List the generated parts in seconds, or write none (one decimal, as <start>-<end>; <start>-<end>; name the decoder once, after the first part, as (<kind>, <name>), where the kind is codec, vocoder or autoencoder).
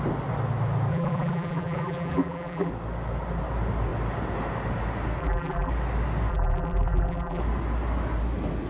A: 0.9-2.7 (vocoder, BigVGAN v2); 5.2-5.7; 6.3-7.4